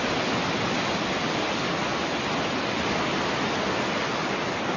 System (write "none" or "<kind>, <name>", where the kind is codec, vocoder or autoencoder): none